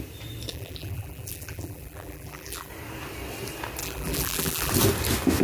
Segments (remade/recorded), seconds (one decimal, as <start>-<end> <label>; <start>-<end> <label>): 0.0-0.5 recorded; 0.5-2.7 remade; 2.7-3.8 recorded; 3.8-4.7 remade; 4.7-5.4 recorded